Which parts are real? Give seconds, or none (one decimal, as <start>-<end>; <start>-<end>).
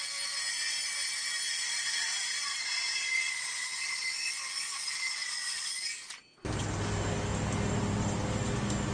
0.0-1.5; 5.7-8.9